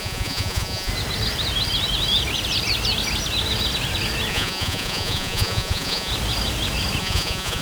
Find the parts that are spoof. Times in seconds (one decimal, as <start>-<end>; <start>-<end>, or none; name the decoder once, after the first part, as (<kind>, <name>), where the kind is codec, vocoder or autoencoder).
0.0-0.9 (vocoder, Vocos); 4.3-6.1; 7.0-7.6